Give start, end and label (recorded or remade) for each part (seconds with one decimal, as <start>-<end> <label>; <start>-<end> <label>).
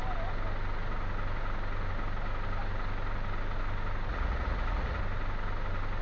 0.0-4.1 recorded; 4.1-5.0 remade; 5.0-6.0 recorded